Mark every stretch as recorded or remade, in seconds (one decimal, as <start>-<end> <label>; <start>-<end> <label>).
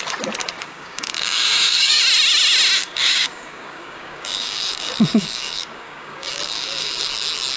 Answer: 0.0-0.4 recorded; 0.4-2.0 remade; 2.0-2.8 recorded; 2.8-7.1 remade; 7.1-7.6 recorded